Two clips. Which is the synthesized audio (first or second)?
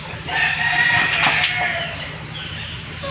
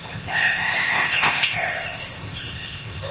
second